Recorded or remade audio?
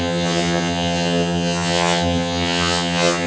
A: remade